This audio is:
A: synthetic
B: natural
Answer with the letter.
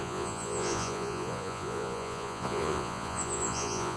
A